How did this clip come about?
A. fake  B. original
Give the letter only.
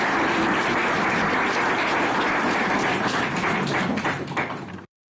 B